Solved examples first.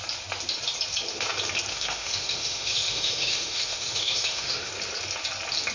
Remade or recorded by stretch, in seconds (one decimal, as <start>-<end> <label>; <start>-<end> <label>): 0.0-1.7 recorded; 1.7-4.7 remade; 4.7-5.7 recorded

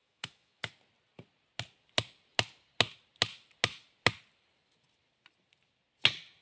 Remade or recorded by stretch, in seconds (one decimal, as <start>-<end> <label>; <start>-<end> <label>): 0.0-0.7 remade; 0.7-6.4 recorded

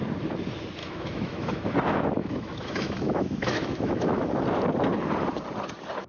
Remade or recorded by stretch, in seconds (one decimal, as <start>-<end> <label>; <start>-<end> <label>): 0.0-0.8 recorded; 0.8-1.7 remade; 1.7-2.2 recorded; 2.2-4.2 remade; 4.2-6.1 recorded